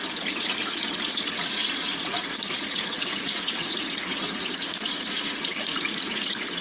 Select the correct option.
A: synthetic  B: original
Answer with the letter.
A